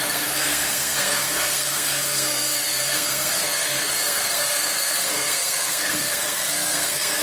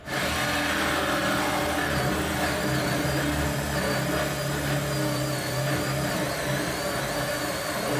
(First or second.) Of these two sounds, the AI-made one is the first